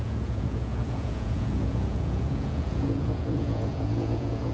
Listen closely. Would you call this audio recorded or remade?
remade